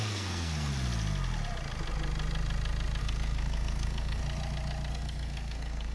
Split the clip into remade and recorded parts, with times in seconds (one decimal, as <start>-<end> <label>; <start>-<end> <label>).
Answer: 0.0-0.7 remade; 0.7-3.0 recorded; 3.0-4.2 remade; 4.2-4.9 recorded; 4.9-5.9 remade